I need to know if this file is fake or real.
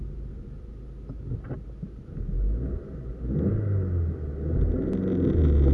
real